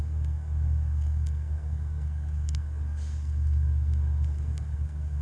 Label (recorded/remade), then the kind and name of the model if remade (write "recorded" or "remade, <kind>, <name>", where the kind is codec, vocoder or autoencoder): remade, codec, SNAC